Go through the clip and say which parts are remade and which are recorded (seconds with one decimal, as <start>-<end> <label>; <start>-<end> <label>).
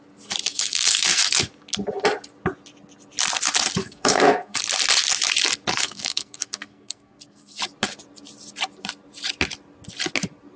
0.0-0.5 recorded; 0.5-1.5 remade; 1.5-3.8 recorded; 3.8-4.6 remade; 4.6-5.8 recorded; 5.8-7.6 remade; 7.6-10.6 recorded